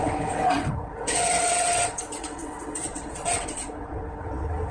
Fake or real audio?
fake